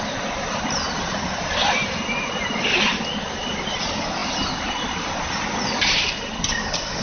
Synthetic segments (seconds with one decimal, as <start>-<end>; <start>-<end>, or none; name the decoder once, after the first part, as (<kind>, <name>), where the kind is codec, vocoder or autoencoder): none